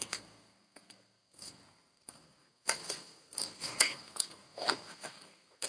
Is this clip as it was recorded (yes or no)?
no